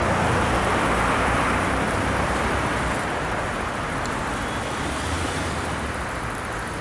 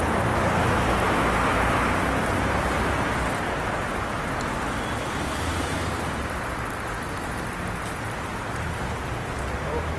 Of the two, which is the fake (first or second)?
first